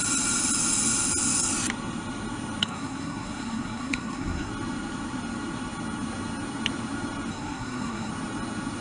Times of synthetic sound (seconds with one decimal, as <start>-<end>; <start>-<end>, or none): 2.6-4.5; 7.3-8.1